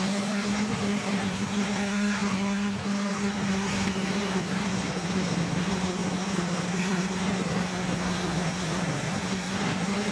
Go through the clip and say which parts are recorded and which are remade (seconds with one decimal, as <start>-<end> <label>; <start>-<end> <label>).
0.0-10.1 remade